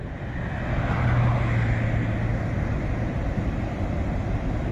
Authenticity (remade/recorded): recorded